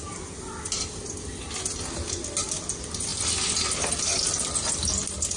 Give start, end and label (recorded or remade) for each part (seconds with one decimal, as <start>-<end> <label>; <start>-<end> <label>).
0.0-5.4 recorded